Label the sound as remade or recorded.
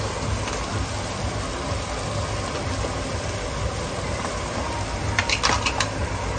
recorded